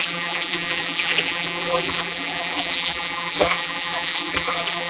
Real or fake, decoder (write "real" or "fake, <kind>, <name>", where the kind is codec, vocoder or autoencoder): fake, vocoder, BigVGAN v2